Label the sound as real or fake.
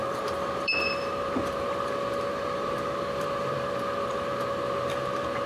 fake